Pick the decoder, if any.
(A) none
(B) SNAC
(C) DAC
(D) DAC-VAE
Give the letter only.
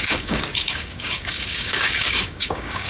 C